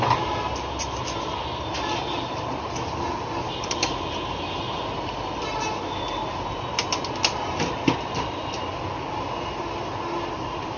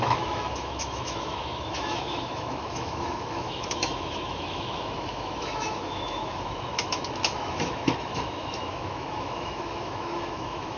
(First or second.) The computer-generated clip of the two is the second